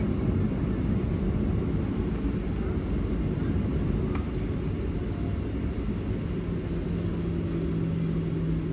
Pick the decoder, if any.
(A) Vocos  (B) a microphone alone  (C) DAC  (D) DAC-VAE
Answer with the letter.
B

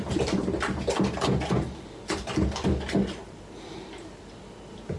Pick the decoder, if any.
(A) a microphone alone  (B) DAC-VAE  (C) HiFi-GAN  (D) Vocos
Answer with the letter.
A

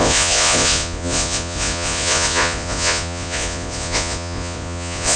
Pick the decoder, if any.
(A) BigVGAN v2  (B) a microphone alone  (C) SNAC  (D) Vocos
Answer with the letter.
D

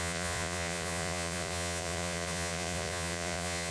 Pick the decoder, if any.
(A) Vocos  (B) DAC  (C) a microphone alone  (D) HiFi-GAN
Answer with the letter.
A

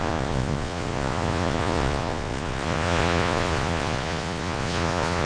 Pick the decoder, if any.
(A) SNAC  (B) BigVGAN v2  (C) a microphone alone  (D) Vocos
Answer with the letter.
D